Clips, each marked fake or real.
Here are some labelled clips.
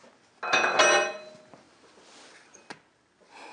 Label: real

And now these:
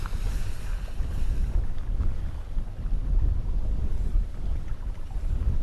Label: real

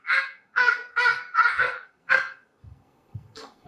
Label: fake